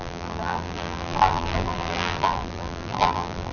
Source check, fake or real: fake